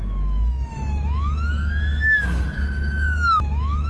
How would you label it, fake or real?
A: fake